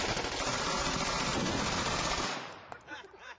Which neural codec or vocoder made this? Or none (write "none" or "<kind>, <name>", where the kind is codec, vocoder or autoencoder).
none